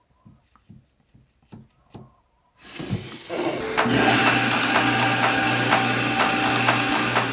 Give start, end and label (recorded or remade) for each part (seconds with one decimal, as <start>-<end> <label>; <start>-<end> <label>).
0.0-7.3 recorded